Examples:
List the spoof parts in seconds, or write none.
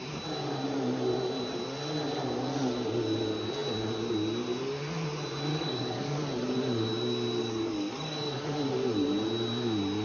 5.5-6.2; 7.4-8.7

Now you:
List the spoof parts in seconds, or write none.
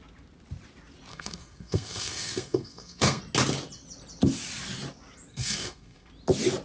1.1-3.2; 5.3-6.1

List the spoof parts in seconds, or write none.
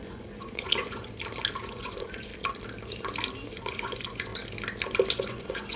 0.0-1.0; 1.6-2.3; 3.5-4.3; 5.1-5.8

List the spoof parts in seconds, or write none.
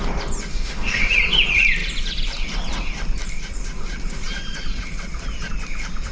0.5-1.1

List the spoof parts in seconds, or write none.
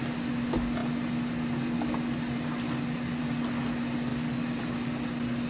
none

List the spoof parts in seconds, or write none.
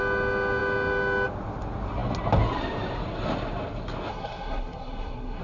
4.1-5.4